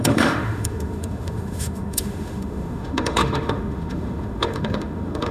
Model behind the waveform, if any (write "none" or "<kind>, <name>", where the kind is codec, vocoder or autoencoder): autoencoder, DAC-VAE